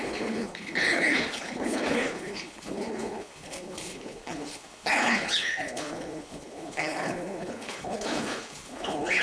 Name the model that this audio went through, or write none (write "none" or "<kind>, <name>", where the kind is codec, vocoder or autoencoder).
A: codec, HILCodec